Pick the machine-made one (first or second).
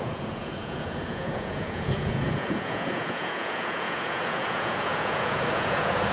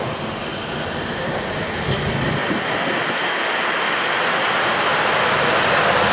first